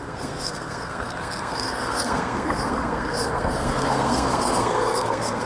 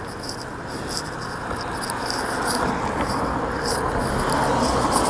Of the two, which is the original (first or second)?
second